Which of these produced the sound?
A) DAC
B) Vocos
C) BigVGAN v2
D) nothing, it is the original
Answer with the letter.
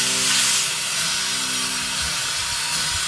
D